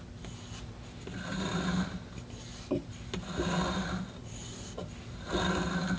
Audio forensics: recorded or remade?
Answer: recorded